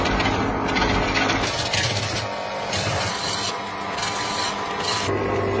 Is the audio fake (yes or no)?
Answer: no